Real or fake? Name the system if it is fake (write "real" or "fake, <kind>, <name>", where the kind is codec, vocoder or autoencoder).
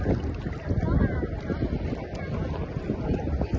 real